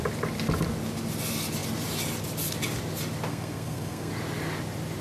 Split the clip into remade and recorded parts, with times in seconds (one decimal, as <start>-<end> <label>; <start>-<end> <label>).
0.0-3.3 recorded; 3.3-4.1 remade; 4.1-5.0 recorded